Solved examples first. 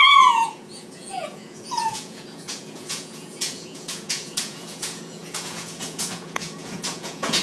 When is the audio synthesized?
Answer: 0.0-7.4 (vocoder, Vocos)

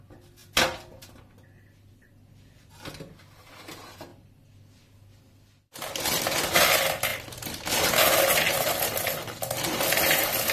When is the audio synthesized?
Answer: none

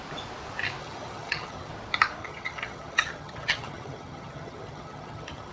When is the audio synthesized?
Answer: 0.8-1.7 (vocoder, HiFi-GAN); 2.2-5.5

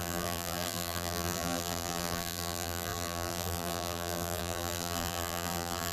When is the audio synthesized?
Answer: 0.0-5.9 (vocoder, BigVGAN v2)

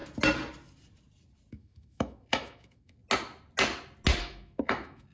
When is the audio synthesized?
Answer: 1.5-3.0 (autoencoder, DAC-VAE); 4.2-5.1